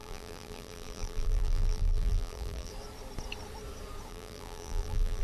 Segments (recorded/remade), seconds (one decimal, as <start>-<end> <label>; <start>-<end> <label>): 0.0-2.7 remade; 2.7-4.1 recorded; 4.1-5.2 remade